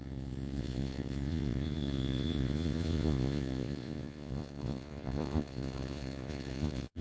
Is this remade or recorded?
remade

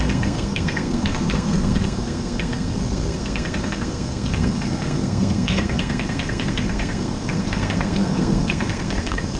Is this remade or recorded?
remade